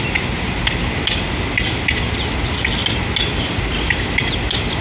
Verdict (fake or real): real